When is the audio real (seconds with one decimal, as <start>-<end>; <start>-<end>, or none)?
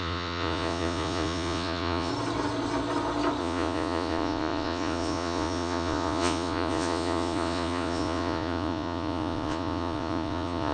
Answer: 2.1-3.4